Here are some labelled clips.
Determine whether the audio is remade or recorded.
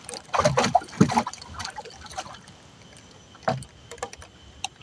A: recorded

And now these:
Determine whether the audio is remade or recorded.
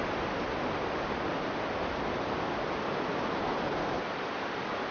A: recorded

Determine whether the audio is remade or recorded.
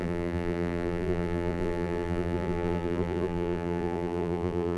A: remade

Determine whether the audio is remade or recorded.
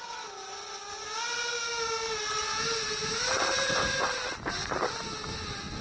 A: recorded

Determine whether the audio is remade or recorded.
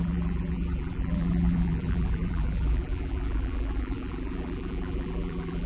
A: remade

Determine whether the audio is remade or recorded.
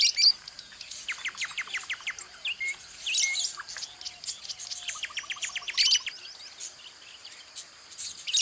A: recorded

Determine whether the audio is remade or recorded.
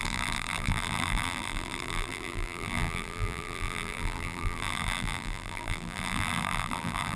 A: remade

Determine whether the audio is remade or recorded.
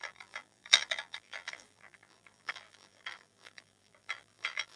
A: remade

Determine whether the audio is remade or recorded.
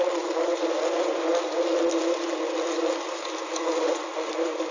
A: recorded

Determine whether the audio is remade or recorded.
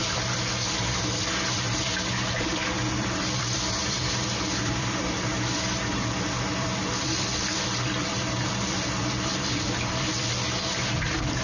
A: remade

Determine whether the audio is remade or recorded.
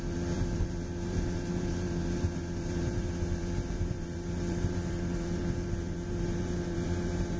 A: remade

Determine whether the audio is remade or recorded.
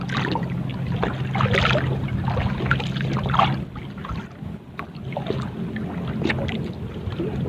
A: recorded